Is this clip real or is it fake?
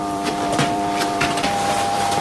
fake